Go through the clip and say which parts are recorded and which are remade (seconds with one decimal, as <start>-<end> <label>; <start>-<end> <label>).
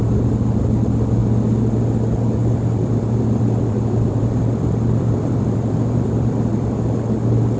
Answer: 0.0-2.4 recorded; 2.4-6.5 remade; 6.5-7.6 recorded